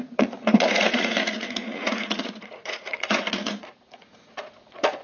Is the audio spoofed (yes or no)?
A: yes